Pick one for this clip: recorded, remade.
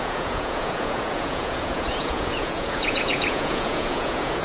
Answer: remade